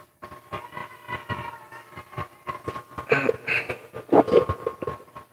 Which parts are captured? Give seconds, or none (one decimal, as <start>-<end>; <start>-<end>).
0.0-4.7